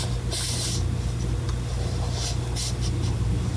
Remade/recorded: recorded